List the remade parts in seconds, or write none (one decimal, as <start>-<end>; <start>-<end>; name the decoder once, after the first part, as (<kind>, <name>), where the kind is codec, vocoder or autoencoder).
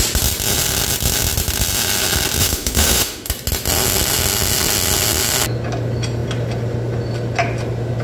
2.4-3.3 (autoencoder, DAC-VAE)